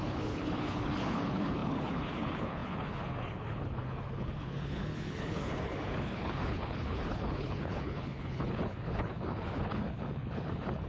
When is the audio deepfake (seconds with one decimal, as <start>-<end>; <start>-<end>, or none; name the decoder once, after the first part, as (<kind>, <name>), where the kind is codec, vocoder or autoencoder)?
0.0-10.9 (codec, HILCodec)